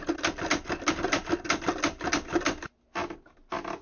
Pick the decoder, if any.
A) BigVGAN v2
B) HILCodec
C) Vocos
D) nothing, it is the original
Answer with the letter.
D